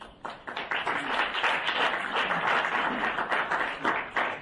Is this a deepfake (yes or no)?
no